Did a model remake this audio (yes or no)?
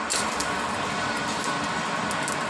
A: no